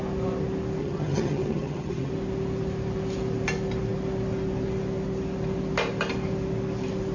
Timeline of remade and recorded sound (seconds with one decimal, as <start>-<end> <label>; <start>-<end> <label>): 0.0-0.8 recorded; 0.8-2.1 remade; 2.1-7.1 recorded

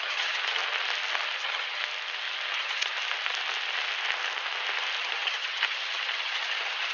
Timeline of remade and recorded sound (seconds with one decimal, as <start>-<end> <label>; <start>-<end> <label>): 0.0-0.6 remade; 0.6-1.4 recorded; 1.4-1.8 remade; 1.8-2.5 recorded; 2.5-2.9 remade; 2.9-5.0 recorded; 5.0-6.9 remade